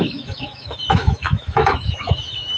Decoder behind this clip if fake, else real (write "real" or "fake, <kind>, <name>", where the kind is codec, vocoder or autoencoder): fake, autoencoder, DAC-VAE